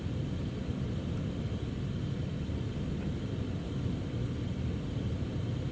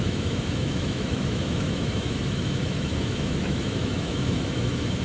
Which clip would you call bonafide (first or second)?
first